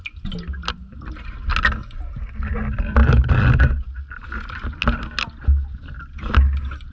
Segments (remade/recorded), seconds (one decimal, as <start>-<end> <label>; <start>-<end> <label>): 0.0-6.9 recorded